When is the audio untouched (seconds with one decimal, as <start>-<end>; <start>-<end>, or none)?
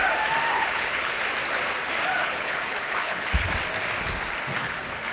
0.0-0.5; 1.2-2.2; 3.3-4.6